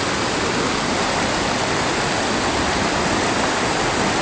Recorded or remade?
recorded